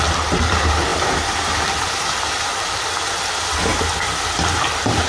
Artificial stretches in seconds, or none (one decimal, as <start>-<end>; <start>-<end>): 0.9-3.3